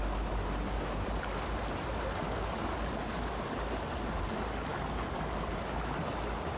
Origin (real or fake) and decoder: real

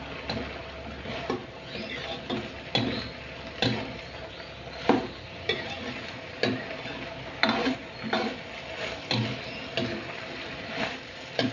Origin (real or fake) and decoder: real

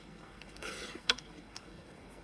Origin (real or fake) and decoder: fake, codec, SNAC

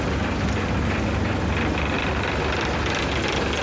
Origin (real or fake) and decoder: real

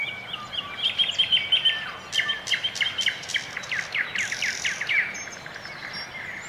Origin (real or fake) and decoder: real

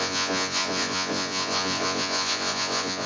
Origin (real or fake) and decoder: fake, vocoder, Vocos